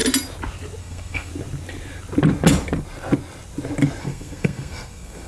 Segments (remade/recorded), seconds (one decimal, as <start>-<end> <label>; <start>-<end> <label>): 0.0-0.8 recorded; 0.8-1.3 remade; 1.3-4.0 recorded; 4.0-5.3 remade